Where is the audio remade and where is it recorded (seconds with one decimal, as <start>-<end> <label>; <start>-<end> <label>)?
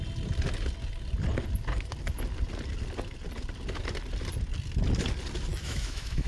0.0-5.5 recorded; 5.5-6.3 remade